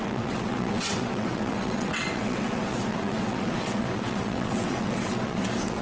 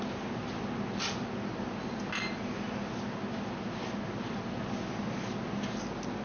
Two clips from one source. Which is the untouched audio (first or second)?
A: second